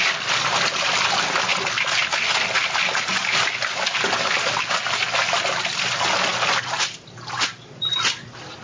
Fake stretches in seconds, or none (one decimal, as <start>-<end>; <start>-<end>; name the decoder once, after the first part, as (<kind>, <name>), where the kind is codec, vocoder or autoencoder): none